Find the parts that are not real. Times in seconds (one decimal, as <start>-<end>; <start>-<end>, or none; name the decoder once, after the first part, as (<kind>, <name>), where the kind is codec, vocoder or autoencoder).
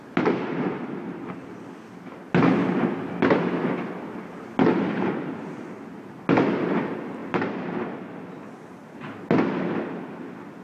none